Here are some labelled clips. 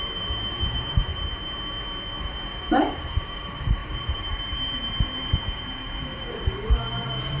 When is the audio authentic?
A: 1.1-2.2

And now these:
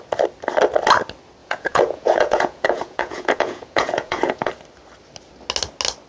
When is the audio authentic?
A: 0.0-1.4; 4.5-6.1

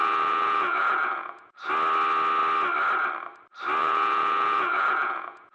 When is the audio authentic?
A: 1.7-3.8